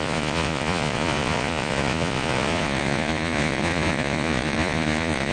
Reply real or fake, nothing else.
fake